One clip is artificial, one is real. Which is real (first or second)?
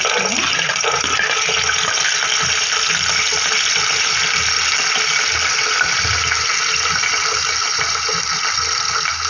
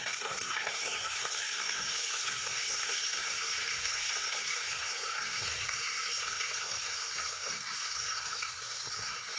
first